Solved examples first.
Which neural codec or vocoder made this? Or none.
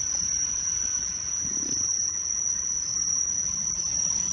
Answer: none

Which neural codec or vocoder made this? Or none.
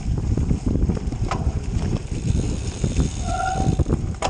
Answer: none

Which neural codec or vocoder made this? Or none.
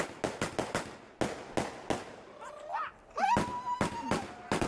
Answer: none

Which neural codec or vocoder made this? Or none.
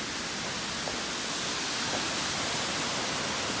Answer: none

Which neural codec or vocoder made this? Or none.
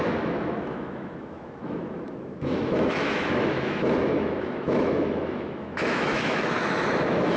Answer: autoencoder, DAC-VAE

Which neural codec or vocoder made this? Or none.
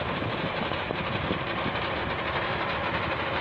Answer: vocoder, BigVGAN v2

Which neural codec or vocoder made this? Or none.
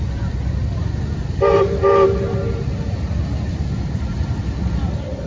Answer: none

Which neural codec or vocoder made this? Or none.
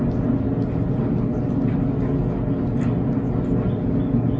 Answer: none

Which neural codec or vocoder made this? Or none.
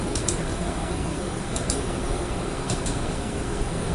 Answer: codec, SNAC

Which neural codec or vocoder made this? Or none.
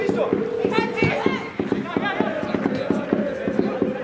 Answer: none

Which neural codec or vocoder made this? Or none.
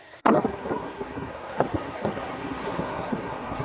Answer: codec, SNAC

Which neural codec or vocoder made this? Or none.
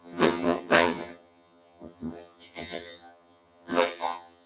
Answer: vocoder, HiFi-GAN